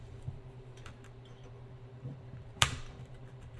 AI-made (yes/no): yes